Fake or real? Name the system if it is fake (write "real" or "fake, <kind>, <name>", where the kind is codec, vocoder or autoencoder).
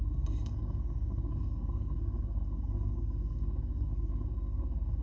fake, codec, SNAC